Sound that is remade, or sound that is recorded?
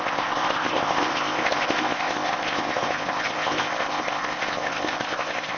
remade